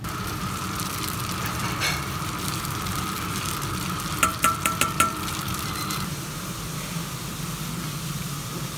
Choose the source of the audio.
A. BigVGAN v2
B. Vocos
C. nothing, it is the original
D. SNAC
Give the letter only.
A